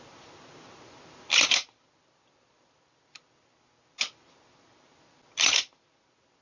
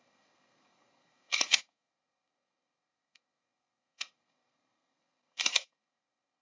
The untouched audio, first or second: first